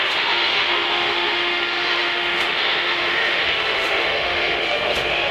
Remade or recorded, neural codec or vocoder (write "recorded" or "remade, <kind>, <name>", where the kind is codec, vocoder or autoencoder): remade, autoencoder, DAC-VAE